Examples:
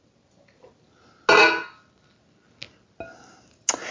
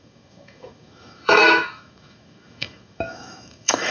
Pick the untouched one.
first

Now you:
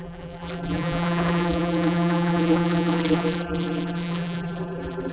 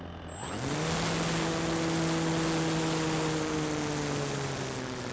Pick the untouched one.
second